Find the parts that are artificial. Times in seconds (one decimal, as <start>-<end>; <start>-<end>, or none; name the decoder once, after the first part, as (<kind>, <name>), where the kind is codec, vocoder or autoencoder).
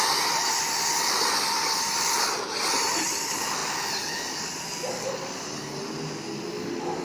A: none